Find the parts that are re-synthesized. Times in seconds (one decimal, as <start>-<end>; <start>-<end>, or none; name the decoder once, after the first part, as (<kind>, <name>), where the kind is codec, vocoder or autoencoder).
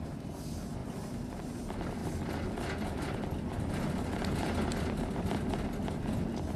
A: none